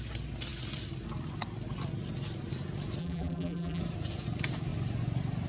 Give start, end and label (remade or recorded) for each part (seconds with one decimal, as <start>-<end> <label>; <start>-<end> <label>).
0.0-3.0 recorded; 3.0-3.8 remade; 3.8-5.5 recorded